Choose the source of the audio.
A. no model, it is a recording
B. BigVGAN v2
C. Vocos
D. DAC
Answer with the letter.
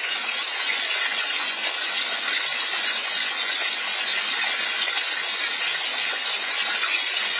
C